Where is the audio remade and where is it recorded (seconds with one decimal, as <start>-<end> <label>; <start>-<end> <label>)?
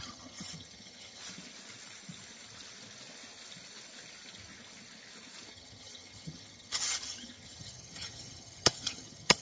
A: 0.0-1.2 remade; 1.2-5.5 recorded; 5.5-9.4 remade